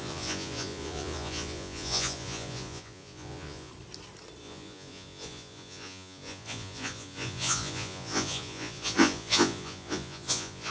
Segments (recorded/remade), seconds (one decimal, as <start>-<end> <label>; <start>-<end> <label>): 0.0-3.7 remade; 3.7-4.4 recorded; 4.4-10.7 remade